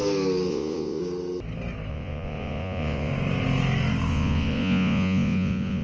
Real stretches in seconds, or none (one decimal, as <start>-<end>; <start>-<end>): 0.0-0.5; 1.0-1.9; 3.1-4.1